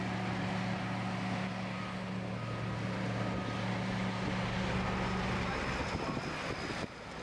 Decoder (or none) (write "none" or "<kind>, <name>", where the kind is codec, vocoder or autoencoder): none